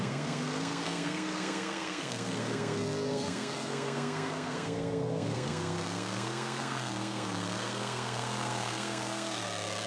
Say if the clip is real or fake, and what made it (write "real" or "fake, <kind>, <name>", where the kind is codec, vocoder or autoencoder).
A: fake, codec, SNAC